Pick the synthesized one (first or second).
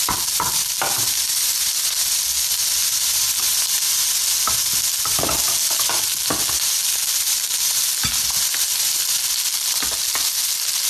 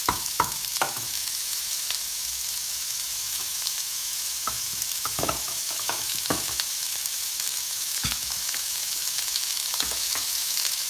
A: second